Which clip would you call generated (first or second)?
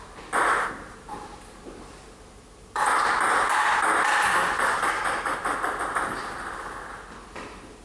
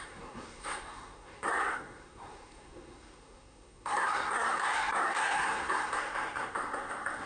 second